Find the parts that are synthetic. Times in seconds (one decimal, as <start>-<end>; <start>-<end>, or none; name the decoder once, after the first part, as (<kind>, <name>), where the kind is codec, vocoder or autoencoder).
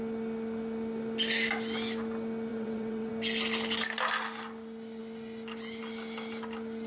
2.5-3.1 (vocoder, WaveNeXt)